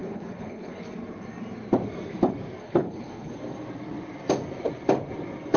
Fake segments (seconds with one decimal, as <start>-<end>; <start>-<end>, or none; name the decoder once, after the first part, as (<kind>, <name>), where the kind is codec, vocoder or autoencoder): 0.0-0.8 (codec, HILCodec); 2.6-3.3